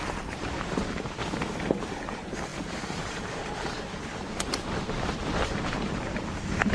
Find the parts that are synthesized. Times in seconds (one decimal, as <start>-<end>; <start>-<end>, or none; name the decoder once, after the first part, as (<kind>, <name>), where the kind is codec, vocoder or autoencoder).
0.0-1.2 (vocoder, BigVGAN v2); 1.7-6.7